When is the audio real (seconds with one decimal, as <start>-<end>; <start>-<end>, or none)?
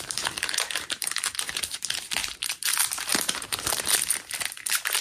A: 3.1-3.7